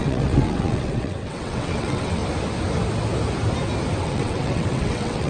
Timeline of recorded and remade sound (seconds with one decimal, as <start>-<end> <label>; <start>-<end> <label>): 0.0-2.2 remade; 2.2-4.0 recorded; 4.0-5.3 remade